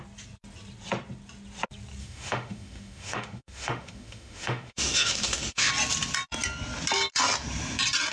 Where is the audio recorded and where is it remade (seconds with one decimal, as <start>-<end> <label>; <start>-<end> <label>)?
0.0-2.0 recorded; 2.0-5.7 remade; 5.7-8.1 recorded